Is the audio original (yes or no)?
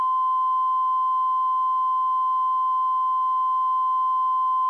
yes